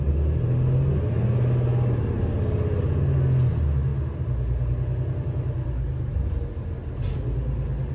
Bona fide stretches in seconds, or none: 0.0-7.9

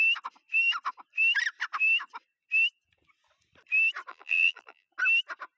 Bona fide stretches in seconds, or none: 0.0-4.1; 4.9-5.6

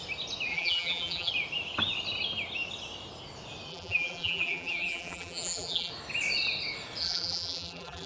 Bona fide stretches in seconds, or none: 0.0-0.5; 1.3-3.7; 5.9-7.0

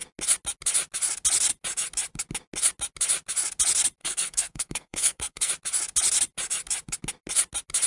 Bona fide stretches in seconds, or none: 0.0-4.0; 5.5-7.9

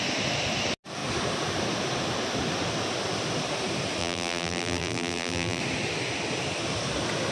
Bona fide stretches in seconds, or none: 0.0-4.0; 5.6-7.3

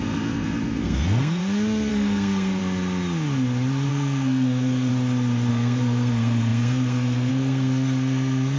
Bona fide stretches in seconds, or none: 1.4-1.9; 2.6-3.9; 4.9-5.5

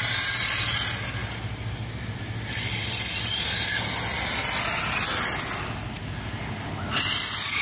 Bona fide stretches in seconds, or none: 0.0-7.6

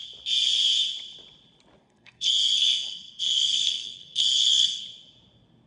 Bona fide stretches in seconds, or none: 0.0-1.8; 4.8-5.7